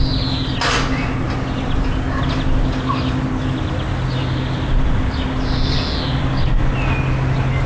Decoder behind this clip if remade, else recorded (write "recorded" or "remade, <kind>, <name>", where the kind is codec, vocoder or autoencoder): recorded